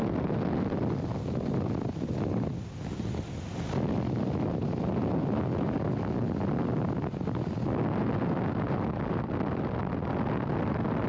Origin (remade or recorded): recorded